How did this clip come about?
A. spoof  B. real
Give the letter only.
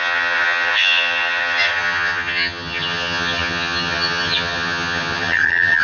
A